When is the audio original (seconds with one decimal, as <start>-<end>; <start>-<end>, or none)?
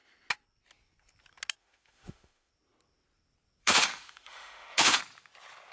0.0-1.6; 2.5-3.6; 5.0-5.7